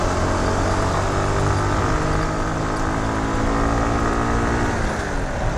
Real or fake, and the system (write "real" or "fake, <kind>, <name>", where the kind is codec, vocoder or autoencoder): real